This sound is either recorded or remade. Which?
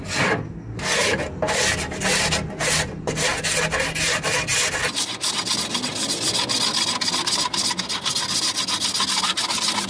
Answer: recorded